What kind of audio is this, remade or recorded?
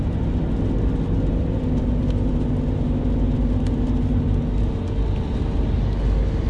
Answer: recorded